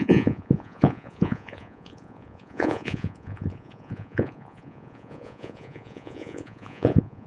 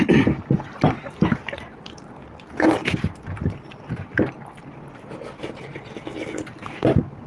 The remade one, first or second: first